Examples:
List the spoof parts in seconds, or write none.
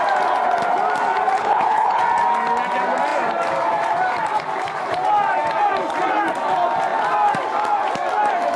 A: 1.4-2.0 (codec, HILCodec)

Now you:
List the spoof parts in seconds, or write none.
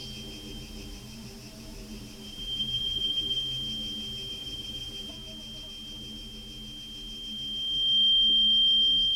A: 0.5-3.4 (vocoder, BigVGAN v2); 4.3-5.1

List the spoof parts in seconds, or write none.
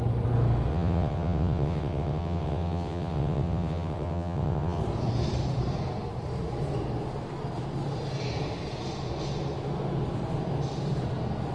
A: 0.7-4.8 (vocoder, WaveNeXt)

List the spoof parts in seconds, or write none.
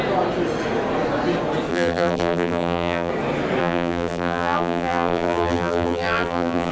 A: 1.7-3.1 (vocoder, BigVGAN v2); 3.6-6.7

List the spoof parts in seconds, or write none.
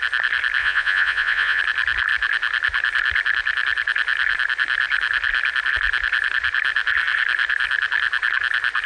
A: 0.6-1.6 (vocoder, Vocos)